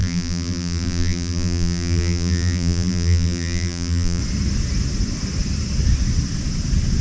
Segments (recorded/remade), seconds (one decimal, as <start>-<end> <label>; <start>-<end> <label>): 0.0-4.2 remade; 4.2-7.0 recorded